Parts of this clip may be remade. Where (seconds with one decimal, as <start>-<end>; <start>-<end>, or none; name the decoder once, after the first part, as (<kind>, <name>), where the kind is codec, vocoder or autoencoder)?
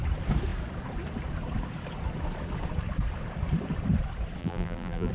4.4-5.1 (vocoder, BigVGAN v2)